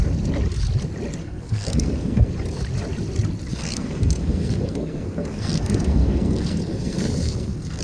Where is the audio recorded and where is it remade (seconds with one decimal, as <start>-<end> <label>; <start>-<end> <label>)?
0.0-1.2 recorded; 1.2-2.3 remade; 2.3-3.5 recorded; 3.5-7.8 remade